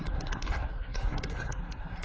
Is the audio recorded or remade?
remade